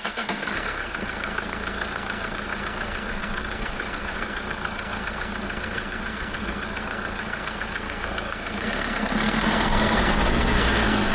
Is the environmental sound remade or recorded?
remade